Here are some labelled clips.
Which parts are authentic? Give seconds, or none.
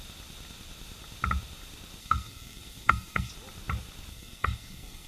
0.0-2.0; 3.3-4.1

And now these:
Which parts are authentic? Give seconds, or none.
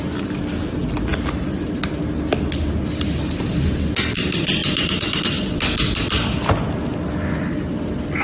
0.0-4.6; 5.2-8.2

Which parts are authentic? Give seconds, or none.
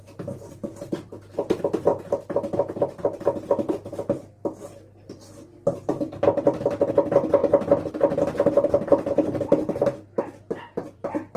1.9-6.9; 7.4-7.9